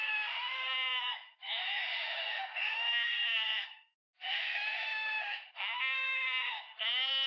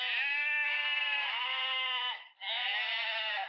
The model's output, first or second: first